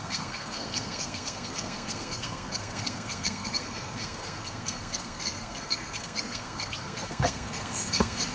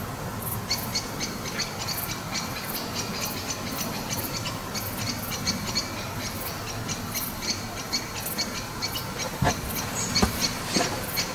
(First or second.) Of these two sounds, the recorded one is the second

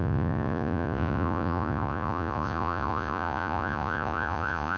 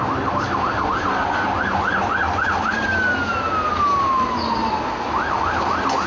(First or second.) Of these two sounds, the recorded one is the second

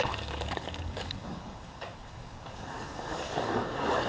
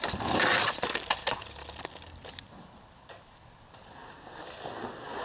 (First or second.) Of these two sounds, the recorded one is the second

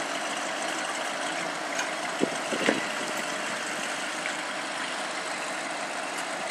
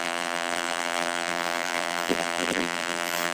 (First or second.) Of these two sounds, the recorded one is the first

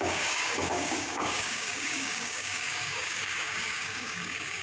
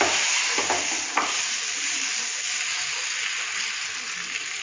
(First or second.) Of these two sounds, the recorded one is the second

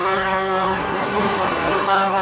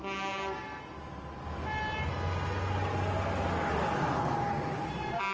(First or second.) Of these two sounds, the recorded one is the second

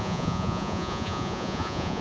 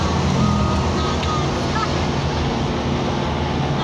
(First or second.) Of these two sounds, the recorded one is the second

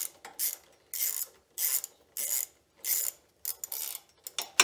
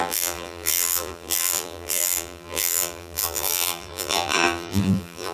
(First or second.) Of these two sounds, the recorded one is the first